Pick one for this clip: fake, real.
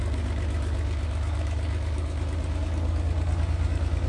fake